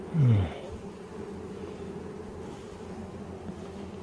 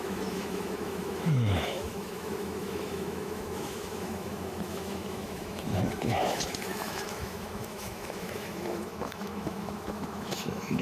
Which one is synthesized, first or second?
second